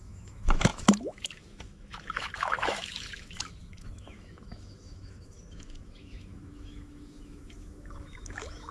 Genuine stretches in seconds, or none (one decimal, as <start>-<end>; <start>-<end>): none